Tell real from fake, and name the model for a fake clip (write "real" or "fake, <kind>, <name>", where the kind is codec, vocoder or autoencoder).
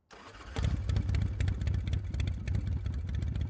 real